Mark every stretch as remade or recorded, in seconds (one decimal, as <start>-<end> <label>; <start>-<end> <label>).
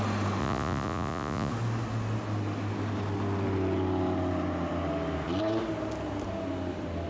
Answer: 0.0-0.4 recorded; 0.4-1.5 remade; 1.5-7.1 recorded